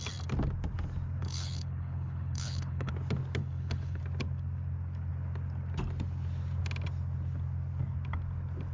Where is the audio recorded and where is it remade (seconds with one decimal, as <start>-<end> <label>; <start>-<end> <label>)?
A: 0.0-1.2 recorded; 1.2-2.9 remade; 2.9-3.4 recorded; 3.4-4.0 remade; 4.0-8.7 recorded